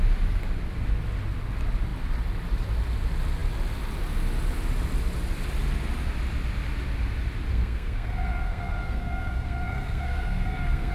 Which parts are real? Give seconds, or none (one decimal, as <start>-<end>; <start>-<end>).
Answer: 0.0-7.5